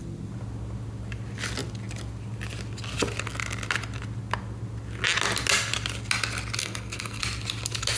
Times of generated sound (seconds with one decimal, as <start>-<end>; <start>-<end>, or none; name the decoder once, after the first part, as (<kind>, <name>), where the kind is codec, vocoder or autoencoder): 6.6-7.2 (codec, SNAC)